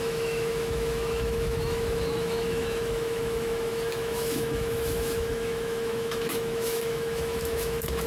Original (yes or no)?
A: no